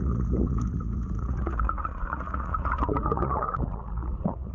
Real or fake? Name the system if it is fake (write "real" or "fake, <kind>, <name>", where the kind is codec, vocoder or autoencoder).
fake, vocoder, Vocos